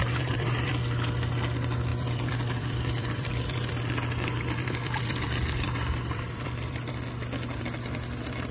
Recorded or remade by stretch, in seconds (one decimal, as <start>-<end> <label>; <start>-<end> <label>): 0.0-1.1 remade; 1.1-1.9 recorded; 1.9-6.9 remade; 6.9-8.5 recorded